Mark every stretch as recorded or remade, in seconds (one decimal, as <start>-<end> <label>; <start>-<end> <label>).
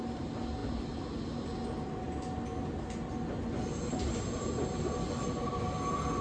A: 0.0-6.2 recorded